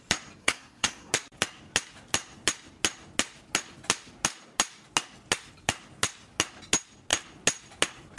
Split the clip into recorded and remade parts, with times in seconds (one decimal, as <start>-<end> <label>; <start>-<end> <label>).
0.0-0.4 recorded; 0.4-1.1 remade; 1.1-8.2 recorded